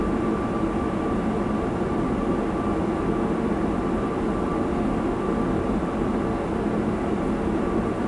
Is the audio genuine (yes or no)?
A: yes